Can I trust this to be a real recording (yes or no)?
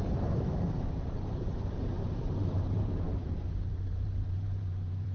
no